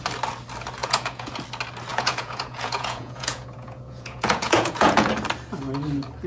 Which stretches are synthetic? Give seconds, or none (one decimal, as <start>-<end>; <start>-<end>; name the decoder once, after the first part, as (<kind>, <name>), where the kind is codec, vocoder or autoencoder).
0.8-1.4 (vocoder, Vocos); 1.9-5.1